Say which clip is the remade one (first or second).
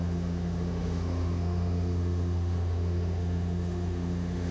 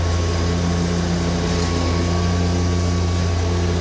first